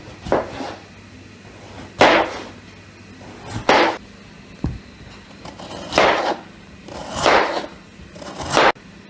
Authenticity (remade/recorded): recorded